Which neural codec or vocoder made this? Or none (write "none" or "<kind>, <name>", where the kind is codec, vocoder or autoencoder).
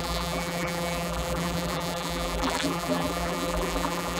vocoder, BigVGAN v2